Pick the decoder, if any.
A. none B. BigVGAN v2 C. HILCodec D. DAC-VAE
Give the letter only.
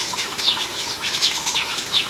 D